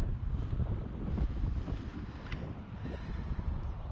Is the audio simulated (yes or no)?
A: no